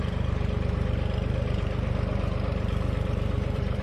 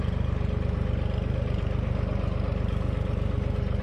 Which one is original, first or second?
second